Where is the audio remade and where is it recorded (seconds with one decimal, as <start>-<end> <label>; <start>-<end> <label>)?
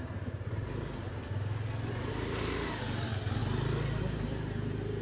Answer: 0.0-1.1 remade; 1.1-2.1 recorded; 2.1-3.4 remade; 3.4-4.0 recorded; 4.0-5.0 remade